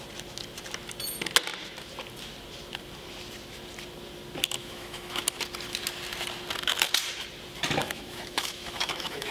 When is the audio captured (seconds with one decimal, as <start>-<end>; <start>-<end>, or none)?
0.0-4.6; 5.2-7.8